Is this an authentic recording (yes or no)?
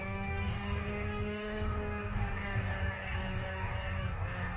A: no